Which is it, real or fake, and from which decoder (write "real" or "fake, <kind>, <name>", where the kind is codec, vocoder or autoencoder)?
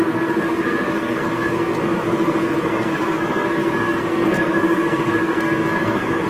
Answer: fake, codec, SNAC